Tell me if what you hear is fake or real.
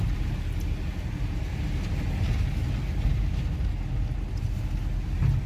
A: real